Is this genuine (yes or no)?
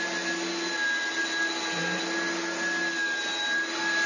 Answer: yes